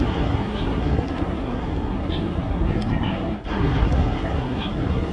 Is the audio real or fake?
fake